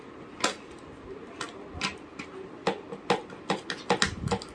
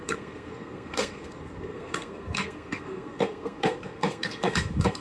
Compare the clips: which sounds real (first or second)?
first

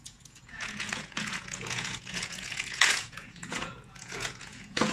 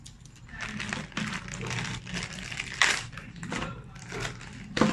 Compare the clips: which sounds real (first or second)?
second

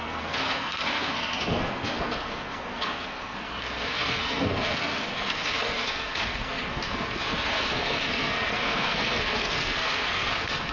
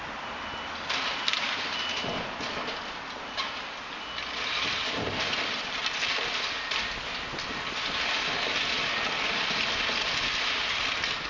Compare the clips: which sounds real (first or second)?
second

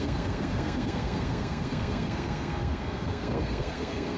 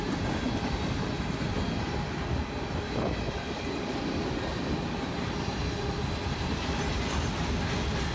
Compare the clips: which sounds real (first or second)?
second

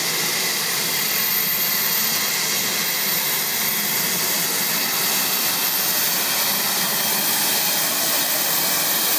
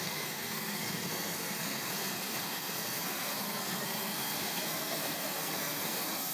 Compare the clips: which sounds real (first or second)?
first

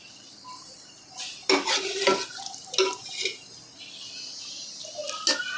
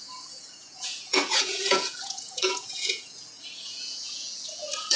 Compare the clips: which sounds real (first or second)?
first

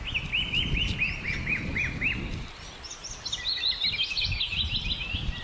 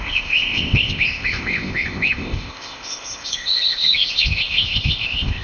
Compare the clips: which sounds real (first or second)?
first